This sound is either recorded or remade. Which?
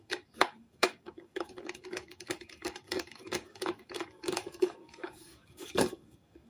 remade